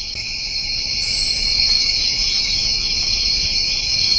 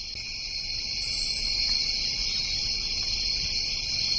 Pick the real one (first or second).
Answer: second